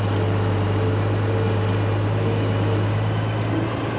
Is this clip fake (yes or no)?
no